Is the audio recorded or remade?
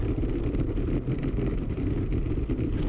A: remade